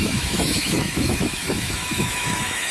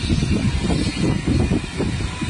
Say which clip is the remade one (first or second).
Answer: first